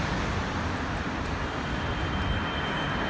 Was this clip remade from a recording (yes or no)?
no